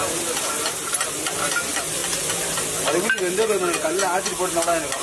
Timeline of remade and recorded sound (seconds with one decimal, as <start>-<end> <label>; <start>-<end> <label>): 0.0-5.0 recorded